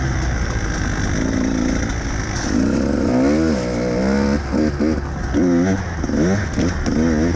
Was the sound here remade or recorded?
recorded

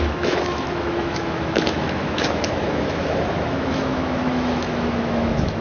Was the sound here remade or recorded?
remade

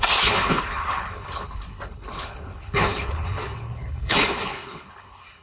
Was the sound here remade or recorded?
remade